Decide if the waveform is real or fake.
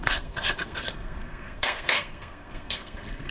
fake